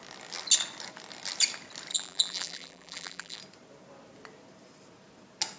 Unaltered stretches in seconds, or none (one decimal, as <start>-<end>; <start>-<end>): 0.0-1.9; 3.4-5.6